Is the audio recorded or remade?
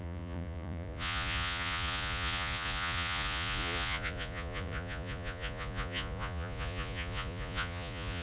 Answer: remade